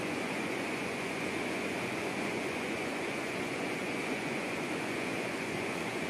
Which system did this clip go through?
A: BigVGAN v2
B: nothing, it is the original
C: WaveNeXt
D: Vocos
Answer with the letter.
D